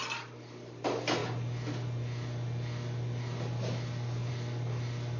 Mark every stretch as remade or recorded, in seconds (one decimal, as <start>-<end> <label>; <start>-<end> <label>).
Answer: 0.0-5.2 recorded